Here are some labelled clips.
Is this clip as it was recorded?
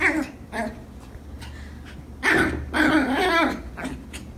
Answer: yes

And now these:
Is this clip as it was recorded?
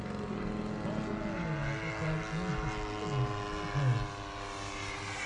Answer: yes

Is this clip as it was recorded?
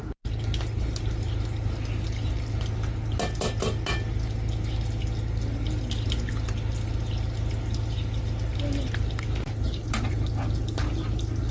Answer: yes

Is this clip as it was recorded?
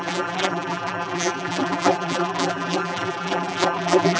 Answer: no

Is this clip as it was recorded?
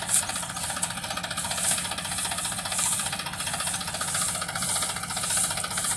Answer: yes